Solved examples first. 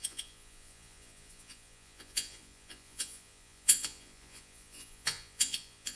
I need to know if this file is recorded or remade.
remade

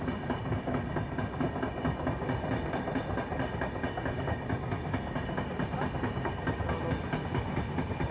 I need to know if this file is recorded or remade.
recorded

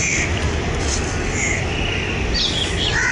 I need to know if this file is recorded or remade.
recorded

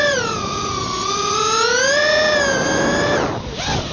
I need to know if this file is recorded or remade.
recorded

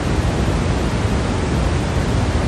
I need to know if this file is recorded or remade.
recorded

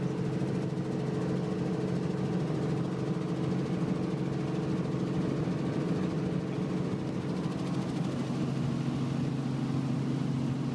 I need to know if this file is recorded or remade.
recorded